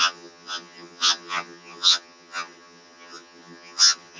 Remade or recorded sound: remade